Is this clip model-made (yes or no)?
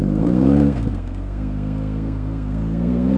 yes